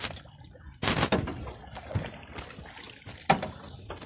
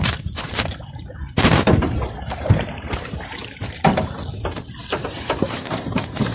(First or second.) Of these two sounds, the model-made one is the second